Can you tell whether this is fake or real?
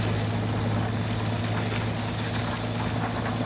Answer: real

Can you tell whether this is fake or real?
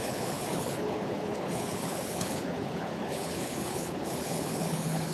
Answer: fake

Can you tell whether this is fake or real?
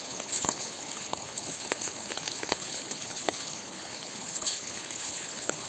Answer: fake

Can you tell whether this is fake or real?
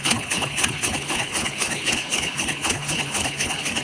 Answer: fake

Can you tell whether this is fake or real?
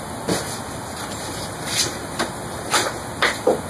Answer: real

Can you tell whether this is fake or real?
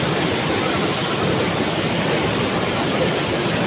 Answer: real